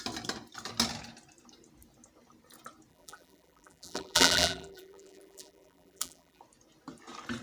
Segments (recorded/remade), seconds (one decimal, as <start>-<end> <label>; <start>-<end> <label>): 0.0-2.9 recorded; 2.9-6.4 remade; 6.4-7.4 recorded